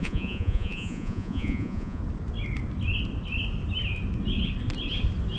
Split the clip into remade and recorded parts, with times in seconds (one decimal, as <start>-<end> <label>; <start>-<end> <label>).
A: 0.0-2.0 remade; 2.0-5.4 recorded